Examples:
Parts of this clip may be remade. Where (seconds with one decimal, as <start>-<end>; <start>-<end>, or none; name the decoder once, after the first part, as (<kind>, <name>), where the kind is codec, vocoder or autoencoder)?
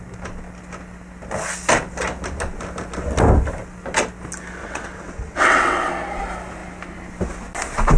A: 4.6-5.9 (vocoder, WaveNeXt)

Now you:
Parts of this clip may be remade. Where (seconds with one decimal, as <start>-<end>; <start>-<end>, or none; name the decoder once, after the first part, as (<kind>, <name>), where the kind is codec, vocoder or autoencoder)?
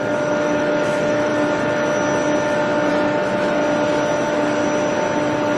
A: 0.0-1.3 (autoencoder, DAC-VAE); 2.9-3.6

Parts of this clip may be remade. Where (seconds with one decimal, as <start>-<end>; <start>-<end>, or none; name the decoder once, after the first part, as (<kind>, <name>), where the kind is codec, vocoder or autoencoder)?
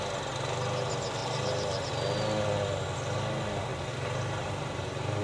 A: 1.2-1.9 (vocoder, BigVGAN v2); 3.7-5.2